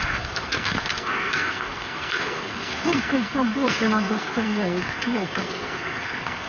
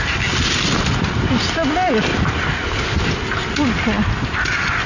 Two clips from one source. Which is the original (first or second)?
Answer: second